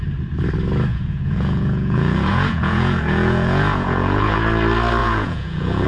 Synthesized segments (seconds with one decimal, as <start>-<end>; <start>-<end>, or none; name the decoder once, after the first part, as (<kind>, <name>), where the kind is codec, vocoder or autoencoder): 0.9-4.4 (vocoder, Vocos); 5.0-5.9